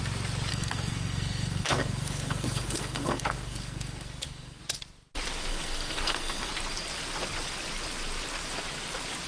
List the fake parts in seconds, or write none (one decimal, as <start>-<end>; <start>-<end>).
0.5-4.6; 5.5-6.5